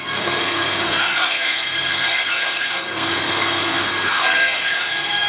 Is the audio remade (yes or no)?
yes